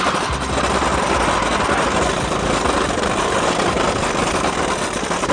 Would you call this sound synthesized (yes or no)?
no